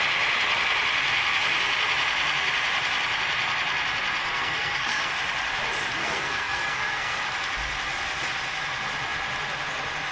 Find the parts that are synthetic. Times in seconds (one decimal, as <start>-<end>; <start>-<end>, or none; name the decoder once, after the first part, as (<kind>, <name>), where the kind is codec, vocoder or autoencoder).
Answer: 4.2-5.1 (codec, SNAC); 6.0-7.2